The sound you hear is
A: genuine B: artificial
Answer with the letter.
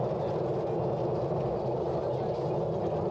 A